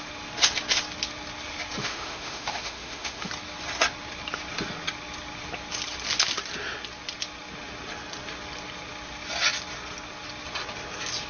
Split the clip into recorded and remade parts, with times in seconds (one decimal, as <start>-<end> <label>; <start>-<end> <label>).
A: 0.0-1.8 recorded; 1.8-3.3 remade; 3.3-11.3 recorded